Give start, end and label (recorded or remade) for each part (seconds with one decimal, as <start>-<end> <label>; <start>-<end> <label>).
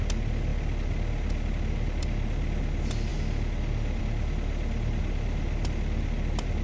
0.0-6.6 recorded